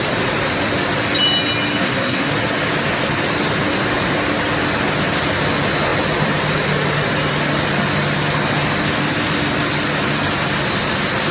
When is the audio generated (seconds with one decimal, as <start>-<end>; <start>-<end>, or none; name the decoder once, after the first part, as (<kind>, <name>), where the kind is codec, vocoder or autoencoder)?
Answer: 1.8-2.3 (codec, SNAC)